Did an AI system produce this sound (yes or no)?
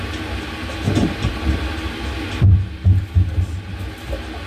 no